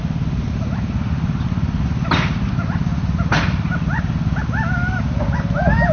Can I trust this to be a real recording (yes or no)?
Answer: yes